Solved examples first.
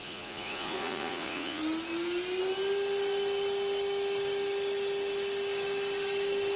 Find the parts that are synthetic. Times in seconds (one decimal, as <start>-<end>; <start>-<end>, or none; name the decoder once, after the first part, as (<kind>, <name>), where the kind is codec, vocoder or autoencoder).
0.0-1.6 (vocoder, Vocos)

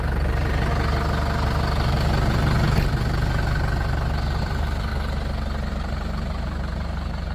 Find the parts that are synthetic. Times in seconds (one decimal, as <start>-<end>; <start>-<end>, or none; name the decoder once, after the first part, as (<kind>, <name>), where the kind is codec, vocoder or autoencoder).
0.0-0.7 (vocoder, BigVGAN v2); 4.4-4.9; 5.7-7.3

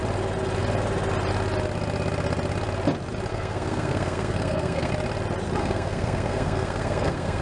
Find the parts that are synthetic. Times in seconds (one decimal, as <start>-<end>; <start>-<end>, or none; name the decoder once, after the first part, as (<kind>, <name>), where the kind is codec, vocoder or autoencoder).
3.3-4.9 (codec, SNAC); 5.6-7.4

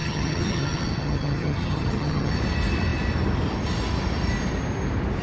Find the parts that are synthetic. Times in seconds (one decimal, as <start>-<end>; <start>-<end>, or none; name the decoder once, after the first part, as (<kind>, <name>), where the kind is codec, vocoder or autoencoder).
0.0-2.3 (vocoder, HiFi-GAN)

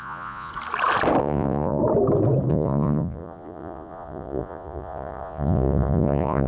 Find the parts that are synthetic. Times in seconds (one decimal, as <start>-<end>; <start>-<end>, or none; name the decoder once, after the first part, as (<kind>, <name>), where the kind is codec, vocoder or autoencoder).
0.0-0.5 (vocoder, Vocos); 1.2-1.8; 2.5-6.5

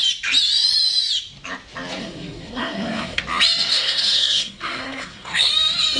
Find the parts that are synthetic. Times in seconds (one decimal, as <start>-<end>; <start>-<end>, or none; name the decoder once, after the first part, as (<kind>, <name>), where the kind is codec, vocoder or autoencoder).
2.0-3.2 (codec, SNAC); 3.7-5.5